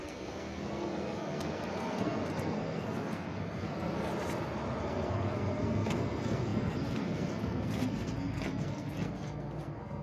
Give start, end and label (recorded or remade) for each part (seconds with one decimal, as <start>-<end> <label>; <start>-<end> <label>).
0.0-4.1 remade; 4.1-4.8 recorded; 4.8-10.0 remade